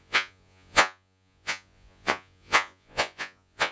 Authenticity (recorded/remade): remade